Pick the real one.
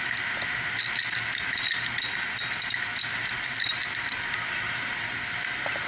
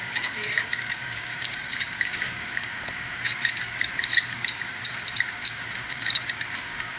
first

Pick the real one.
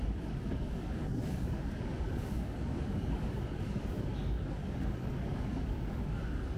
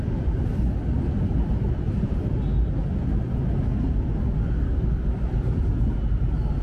second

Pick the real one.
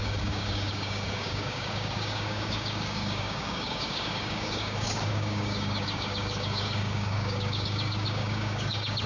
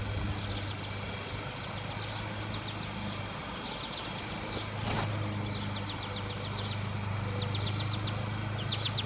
second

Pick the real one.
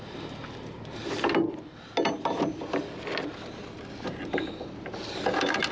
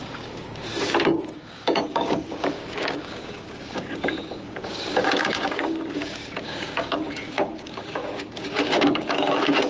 first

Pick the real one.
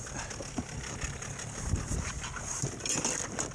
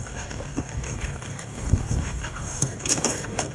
first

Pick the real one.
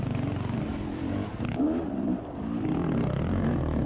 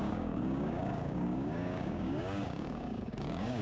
first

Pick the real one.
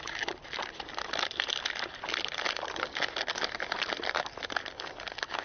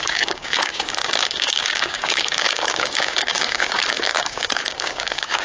first